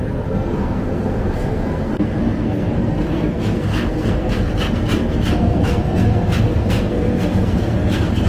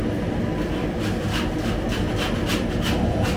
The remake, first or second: first